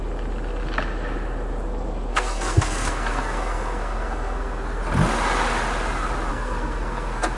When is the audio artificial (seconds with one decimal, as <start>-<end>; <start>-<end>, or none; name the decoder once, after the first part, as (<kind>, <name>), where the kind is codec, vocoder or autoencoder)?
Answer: 2.1-4.8 (codec, SNAC); 6.3-7.4